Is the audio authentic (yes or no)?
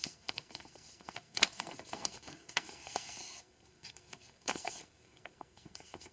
no